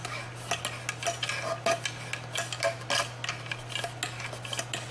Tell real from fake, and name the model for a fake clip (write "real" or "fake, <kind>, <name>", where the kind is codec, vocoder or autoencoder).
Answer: real